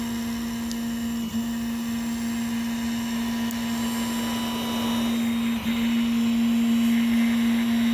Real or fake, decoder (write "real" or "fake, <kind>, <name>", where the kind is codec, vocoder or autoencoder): real